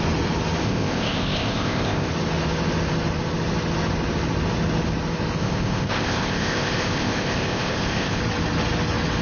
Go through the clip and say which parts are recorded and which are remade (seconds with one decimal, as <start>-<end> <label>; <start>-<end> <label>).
0.0-0.6 recorded; 0.6-2.1 remade; 2.1-5.4 recorded; 5.4-8.2 remade; 8.2-9.2 recorded

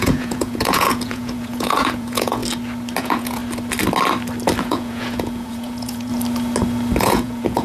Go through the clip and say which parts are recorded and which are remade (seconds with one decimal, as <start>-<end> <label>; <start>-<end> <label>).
0.0-2.4 remade; 2.4-3.0 recorded; 3.0-3.4 remade; 3.4-4.6 recorded; 4.6-6.1 remade; 6.1-7.0 recorded; 7.0-7.6 remade

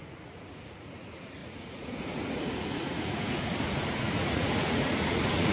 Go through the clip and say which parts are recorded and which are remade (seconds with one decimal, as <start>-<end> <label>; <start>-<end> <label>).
0.0-5.5 remade

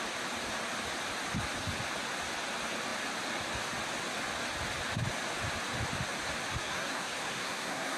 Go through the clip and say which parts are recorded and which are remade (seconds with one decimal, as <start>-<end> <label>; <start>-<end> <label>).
0.0-6.6 recorded; 6.6-8.0 remade